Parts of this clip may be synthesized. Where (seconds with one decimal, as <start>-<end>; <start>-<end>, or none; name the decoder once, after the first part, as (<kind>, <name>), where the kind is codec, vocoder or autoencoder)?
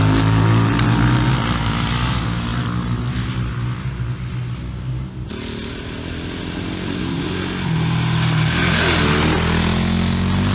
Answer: none